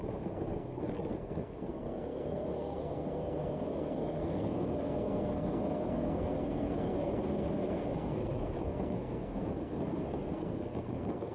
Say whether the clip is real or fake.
fake